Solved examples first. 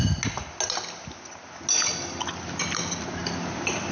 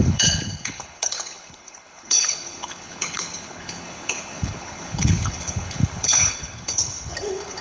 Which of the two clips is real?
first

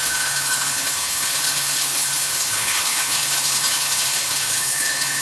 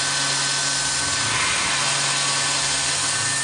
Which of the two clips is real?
second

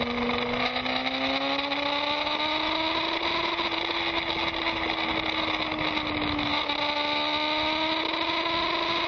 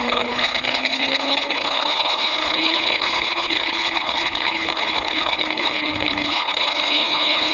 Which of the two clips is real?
first